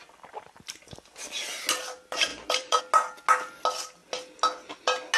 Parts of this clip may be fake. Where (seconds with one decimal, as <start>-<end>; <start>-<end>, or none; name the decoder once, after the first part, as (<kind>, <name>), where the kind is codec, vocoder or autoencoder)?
2.3-2.8 (vocoder, BigVGAN v2)